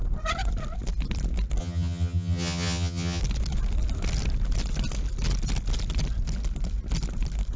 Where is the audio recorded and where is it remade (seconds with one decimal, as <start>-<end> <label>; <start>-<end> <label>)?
0.0-1.6 recorded; 1.6-3.2 remade; 3.2-7.6 recorded

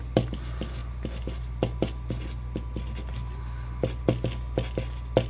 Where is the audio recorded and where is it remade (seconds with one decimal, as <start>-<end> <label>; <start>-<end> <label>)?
0.0-5.3 recorded

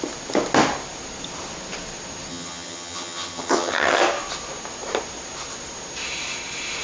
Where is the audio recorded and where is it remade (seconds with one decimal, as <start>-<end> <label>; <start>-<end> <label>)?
0.0-2.3 recorded; 2.3-4.0 remade; 4.0-6.8 recorded

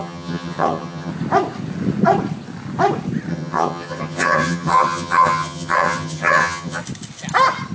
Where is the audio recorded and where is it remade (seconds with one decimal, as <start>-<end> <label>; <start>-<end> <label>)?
0.0-1.1 remade; 1.1-3.3 recorded; 3.3-6.8 remade; 6.8-7.7 recorded

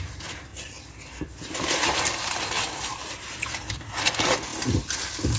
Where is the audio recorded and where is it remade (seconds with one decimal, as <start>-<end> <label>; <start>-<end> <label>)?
0.0-5.4 recorded

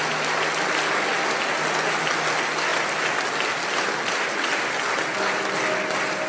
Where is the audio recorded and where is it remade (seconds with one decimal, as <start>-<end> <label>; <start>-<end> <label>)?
0.0-6.3 recorded

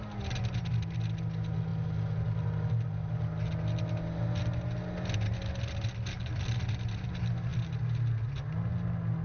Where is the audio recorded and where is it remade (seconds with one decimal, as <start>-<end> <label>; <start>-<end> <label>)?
0.0-9.2 recorded